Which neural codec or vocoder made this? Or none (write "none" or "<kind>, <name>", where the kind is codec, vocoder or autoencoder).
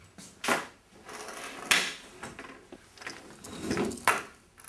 none